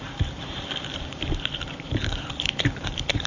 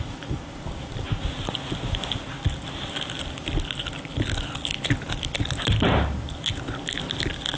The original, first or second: second